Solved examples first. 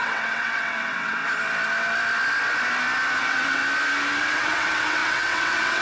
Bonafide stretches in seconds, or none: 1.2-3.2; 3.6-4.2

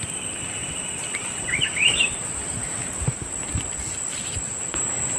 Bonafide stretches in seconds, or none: 0.0-5.2

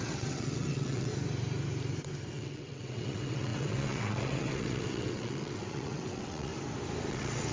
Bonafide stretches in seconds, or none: 1.1-2.3; 6.5-7.1

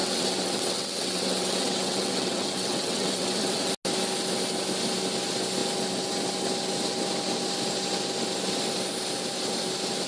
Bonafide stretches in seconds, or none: 3.7-10.1

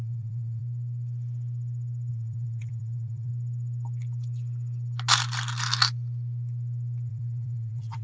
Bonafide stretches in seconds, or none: 0.6-2.1; 3.3-7.1

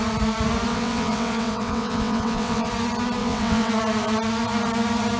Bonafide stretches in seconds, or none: 0.0-0.7; 2.7-3.2; 3.7-5.2